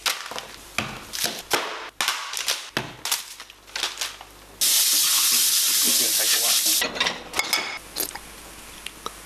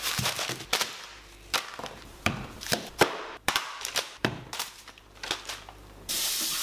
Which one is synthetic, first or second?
second